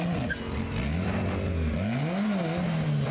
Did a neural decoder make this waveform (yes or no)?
no